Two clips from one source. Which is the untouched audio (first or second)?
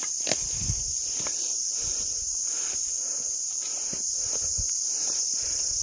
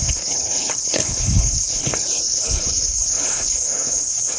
first